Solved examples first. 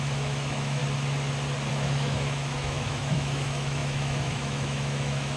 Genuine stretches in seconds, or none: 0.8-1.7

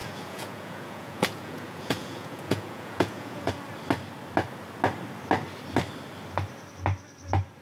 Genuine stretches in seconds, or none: 3.5-7.6

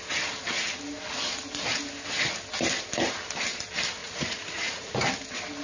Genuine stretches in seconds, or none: 0.0-4.0; 5.0-5.6

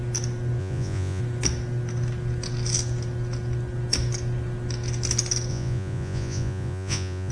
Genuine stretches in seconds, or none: 0.0-0.6; 1.2-5.5

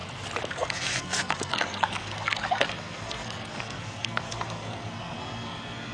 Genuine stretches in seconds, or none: 0.0-0.5

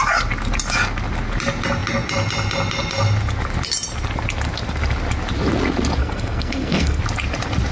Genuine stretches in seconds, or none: 0.0-6.0; 7.0-7.7